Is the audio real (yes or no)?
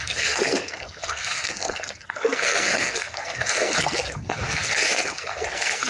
no